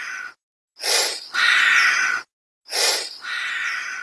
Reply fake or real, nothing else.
real